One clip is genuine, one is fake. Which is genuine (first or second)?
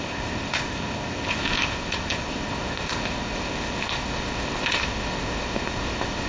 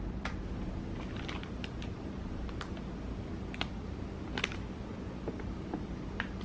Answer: second